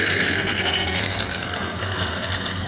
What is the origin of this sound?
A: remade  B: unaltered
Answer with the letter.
A